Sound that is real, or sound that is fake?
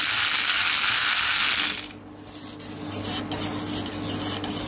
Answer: real